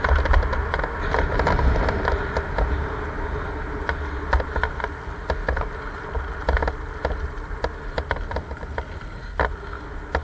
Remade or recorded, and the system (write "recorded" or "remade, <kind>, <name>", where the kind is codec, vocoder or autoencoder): recorded